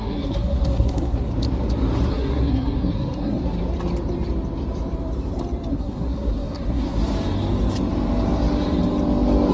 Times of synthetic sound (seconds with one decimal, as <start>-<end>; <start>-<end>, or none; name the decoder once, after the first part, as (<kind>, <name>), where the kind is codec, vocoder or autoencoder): 0.0-1.3 (codec, SNAC); 2.1-3.4; 5.7-7.0